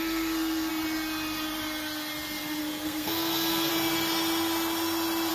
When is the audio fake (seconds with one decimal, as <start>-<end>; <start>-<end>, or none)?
0.0-0.7; 2.6-3.7